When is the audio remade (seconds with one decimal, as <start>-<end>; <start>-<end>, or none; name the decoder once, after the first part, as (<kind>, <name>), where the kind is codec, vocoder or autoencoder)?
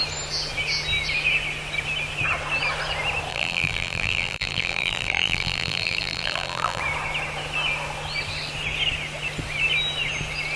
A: 3.3-6.8 (vocoder, BigVGAN v2)